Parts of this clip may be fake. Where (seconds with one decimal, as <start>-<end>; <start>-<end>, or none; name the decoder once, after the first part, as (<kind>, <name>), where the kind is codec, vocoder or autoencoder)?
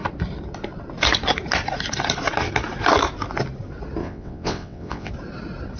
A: 4.0-5.1 (vocoder, WaveNeXt)